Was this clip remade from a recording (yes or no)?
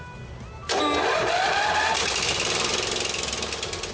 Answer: no